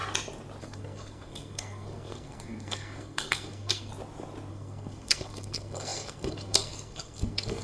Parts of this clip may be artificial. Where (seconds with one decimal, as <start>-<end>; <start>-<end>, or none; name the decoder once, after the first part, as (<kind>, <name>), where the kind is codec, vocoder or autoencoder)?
0.6-3.9 (codec, SNAC); 4.5-7.6